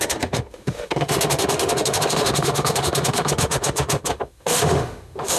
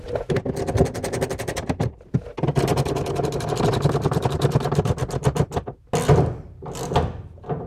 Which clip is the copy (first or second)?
first